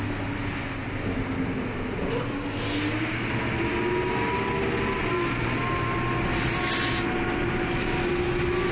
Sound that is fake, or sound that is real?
real